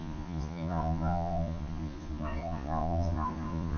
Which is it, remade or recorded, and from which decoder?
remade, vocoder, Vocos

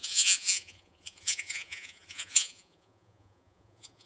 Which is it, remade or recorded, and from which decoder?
remade, vocoder, Vocos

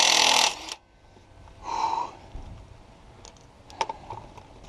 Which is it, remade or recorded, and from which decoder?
recorded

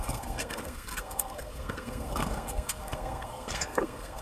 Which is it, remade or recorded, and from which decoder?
remade, codec, SNAC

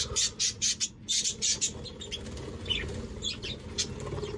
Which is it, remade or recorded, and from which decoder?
recorded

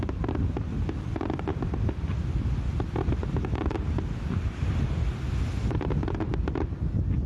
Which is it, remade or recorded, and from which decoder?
recorded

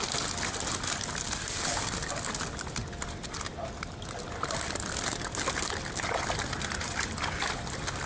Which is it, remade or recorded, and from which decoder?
recorded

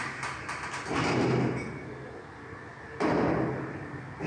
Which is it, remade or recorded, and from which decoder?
recorded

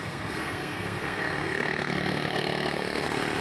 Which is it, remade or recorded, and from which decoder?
remade, codec, SNAC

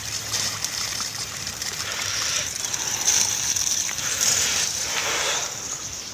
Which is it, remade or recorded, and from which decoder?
remade, vocoder, BigVGAN v2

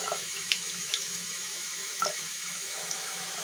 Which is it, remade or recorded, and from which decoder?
remade, autoencoder, DAC-VAE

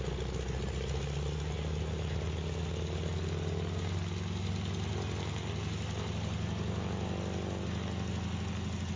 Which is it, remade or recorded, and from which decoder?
recorded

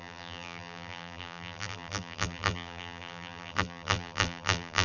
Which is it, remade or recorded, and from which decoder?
remade, vocoder, BigVGAN v2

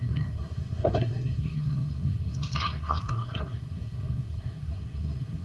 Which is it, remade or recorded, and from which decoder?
remade, codec, SNAC